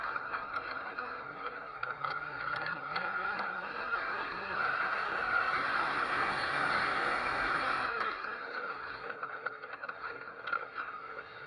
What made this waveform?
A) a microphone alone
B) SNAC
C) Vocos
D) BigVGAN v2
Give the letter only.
B